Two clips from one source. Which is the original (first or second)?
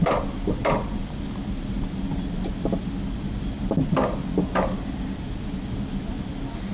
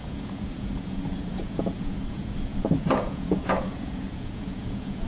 first